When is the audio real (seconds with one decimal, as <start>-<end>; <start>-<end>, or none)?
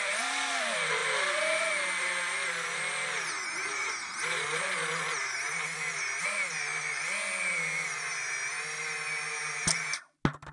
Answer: 0.0-10.5